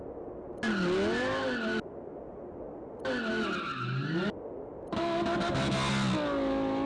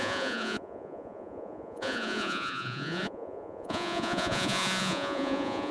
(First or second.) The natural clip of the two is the first